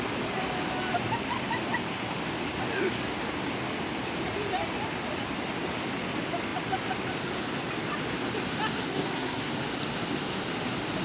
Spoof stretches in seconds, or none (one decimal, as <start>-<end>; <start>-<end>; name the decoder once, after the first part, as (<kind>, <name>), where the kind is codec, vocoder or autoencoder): 8.9-9.5 (codec, SNAC)